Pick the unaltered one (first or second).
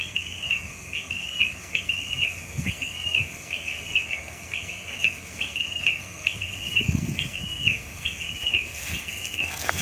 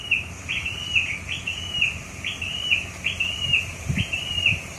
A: second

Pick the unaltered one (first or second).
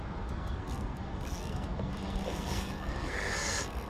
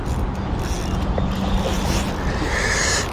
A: second